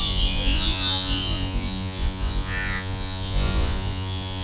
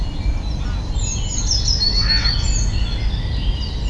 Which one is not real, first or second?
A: first